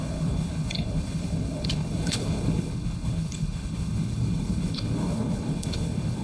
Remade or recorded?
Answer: remade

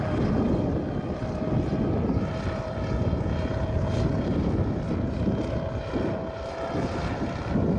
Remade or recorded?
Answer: recorded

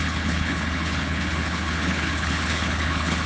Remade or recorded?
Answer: remade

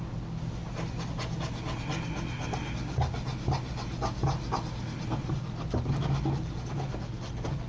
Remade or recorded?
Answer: recorded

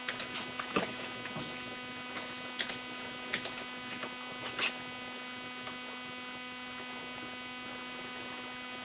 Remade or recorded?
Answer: recorded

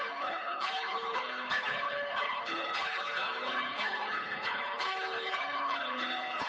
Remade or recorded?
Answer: remade